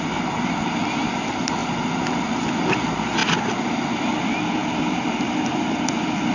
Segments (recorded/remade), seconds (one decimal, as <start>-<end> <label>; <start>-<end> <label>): 0.0-6.3 recorded